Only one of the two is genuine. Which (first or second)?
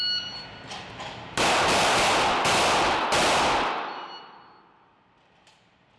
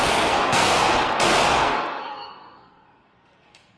first